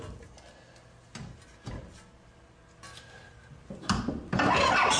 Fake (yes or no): no